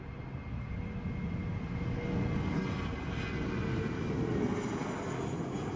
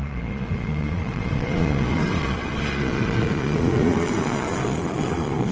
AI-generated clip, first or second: second